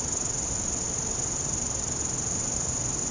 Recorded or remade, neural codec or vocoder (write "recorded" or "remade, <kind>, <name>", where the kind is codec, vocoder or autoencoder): recorded